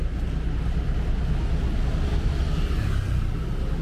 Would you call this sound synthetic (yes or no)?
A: no